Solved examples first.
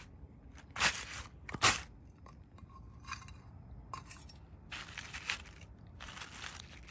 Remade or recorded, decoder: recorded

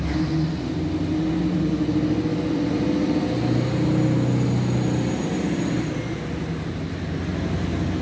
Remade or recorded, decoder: recorded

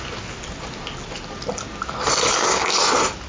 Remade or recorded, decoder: recorded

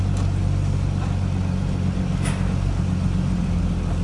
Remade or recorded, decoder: recorded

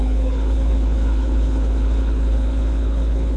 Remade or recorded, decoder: remade, codec, HILCodec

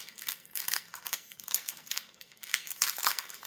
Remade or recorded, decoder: remade, codec, SNAC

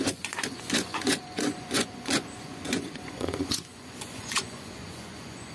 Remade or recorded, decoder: remade, vocoder, Vocos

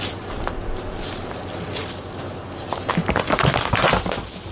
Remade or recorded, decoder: recorded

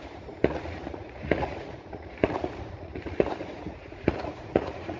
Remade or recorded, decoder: remade, vocoder, Vocos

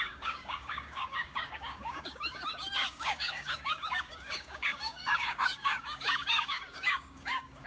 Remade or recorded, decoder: remade, codec, DAC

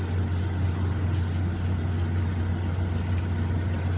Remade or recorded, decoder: recorded